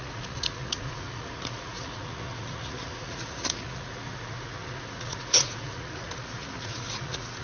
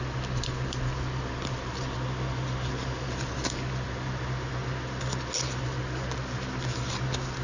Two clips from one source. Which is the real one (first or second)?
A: second